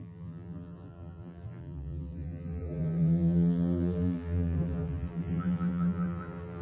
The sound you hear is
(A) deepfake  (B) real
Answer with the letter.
A